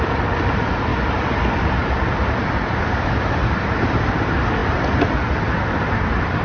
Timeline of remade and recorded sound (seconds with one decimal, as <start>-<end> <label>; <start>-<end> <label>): 0.0-6.4 recorded